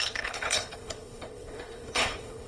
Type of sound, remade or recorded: remade